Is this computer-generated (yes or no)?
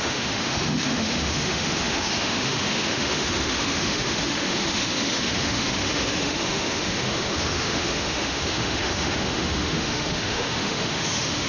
yes